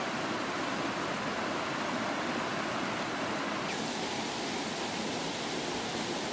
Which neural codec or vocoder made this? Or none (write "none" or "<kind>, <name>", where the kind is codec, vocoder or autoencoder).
none